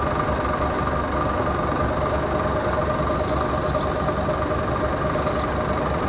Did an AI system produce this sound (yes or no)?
no